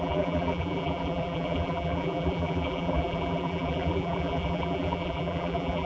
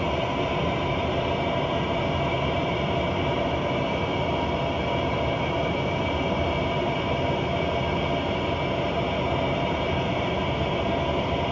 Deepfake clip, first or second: first